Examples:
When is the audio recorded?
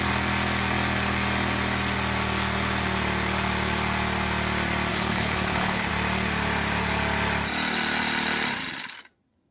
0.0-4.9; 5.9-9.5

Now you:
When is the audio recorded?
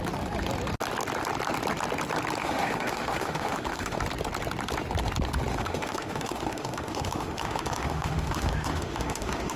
0.0-2.4; 4.0-5.5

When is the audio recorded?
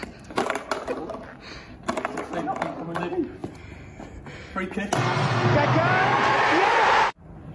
0.0-7.5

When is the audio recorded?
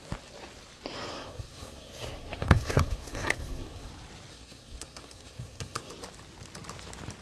0.0-1.1; 3.9-4.3; 5.9-7.2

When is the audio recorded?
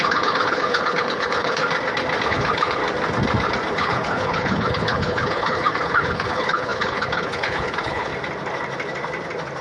1.6-2.3; 2.8-3.7; 8.1-9.6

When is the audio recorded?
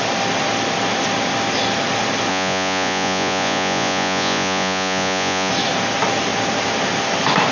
0.0-2.3; 5.5-7.5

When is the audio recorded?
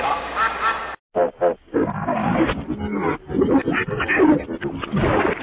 0.8-1.6; 2.2-5.4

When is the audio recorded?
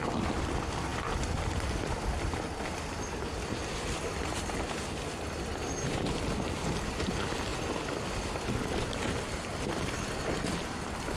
0.0-11.2